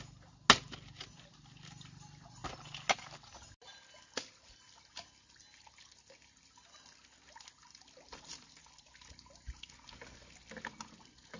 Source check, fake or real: real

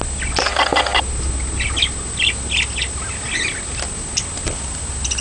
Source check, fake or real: real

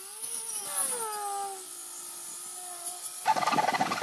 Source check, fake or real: real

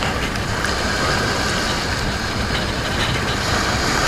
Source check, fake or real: real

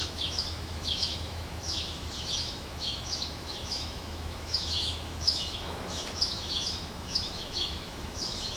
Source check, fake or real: fake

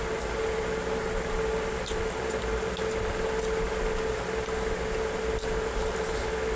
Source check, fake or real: real